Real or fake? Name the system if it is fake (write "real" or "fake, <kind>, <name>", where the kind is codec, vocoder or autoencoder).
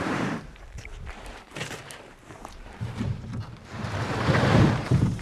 fake, vocoder, BigVGAN v2